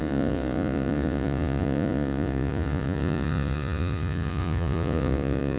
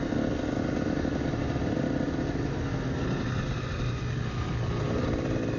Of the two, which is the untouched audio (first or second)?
second